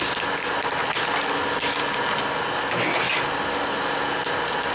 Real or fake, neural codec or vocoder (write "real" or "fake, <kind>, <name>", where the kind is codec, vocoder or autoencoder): real